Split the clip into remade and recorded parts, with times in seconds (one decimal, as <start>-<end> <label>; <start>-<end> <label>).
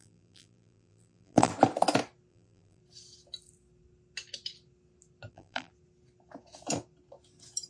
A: 0.0-1.5 remade; 1.5-2.3 recorded; 2.3-2.8 remade; 2.8-5.3 recorded; 5.3-5.7 remade; 5.7-7.7 recorded